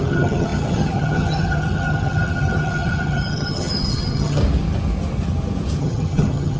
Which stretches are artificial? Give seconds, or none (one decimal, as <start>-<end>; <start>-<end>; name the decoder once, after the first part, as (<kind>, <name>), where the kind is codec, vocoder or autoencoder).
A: 0.0-4.4 (vocoder, HiFi-GAN); 5.8-6.6